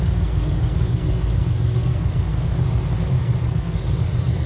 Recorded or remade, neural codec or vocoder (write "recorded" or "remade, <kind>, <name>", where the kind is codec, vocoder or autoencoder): remade, codec, SNAC